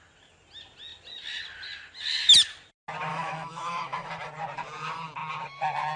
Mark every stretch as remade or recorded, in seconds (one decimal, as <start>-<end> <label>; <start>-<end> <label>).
0.0-3.1 recorded; 3.1-4.1 remade; 4.1-6.0 recorded